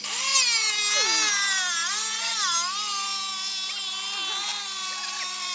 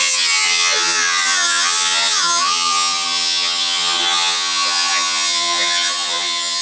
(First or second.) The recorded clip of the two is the first